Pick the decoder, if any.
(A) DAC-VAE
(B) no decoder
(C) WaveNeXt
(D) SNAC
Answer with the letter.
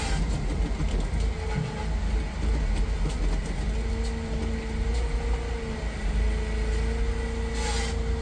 B